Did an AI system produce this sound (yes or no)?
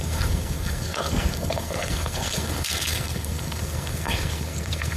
yes